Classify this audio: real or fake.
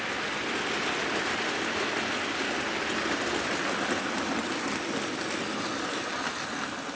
real